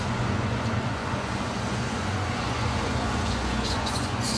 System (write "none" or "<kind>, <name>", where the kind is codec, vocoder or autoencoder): vocoder, Vocos